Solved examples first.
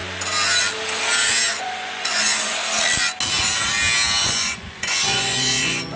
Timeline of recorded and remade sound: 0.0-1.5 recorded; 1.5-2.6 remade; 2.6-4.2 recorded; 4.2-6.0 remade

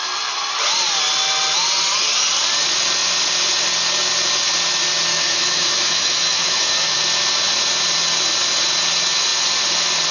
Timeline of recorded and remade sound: 0.0-5.1 recorded; 5.1-7.0 remade; 7.0-10.1 recorded

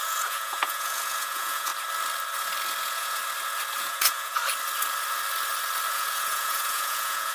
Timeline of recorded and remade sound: 0.0-1.7 remade; 1.7-2.8 recorded; 2.8-3.2 remade; 3.2-3.8 recorded; 3.8-4.4 remade; 4.4-5.9 recorded; 5.9-7.3 remade